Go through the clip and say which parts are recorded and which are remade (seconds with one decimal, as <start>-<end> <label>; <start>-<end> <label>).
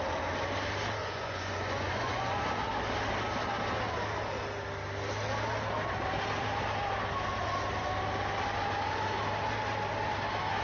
0.0-1.0 recorded; 1.0-2.4 remade; 2.4-10.6 recorded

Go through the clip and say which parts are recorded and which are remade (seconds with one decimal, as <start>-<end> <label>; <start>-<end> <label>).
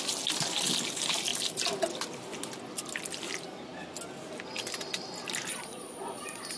0.0-5.5 recorded; 5.5-6.6 remade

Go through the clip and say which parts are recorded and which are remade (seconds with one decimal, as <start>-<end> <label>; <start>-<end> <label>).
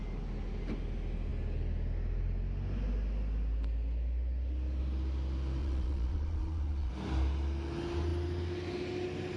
0.0-5.6 recorded; 5.6-6.9 remade; 6.9-9.4 recorded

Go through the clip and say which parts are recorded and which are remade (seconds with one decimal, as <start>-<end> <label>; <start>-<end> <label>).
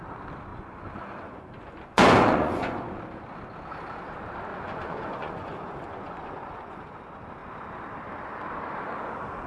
0.0-0.5 recorded; 0.5-3.0 remade; 3.0-4.5 recorded; 4.5-6.8 remade; 6.8-9.5 recorded